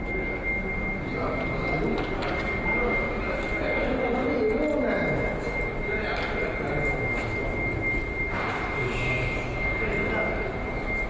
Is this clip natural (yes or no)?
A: yes